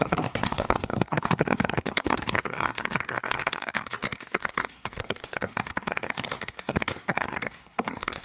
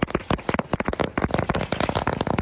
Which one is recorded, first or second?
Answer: second